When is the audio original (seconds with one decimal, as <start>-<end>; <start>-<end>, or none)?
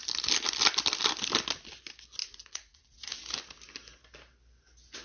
0.0-2.2; 3.2-5.0